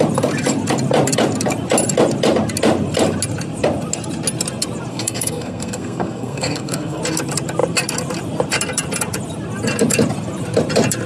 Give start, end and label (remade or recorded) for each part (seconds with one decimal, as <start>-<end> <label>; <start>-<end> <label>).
0.0-4.9 recorded; 4.9-7.0 remade; 7.0-11.1 recorded